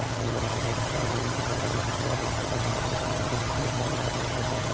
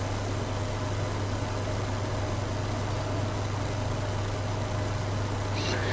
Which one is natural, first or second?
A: second